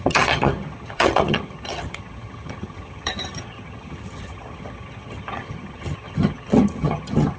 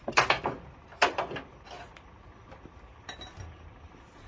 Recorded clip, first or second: second